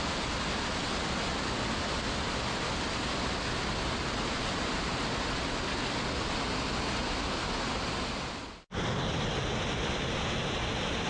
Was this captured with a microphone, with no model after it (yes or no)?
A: yes